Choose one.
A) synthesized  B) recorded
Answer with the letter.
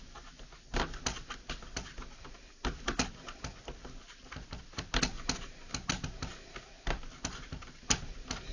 B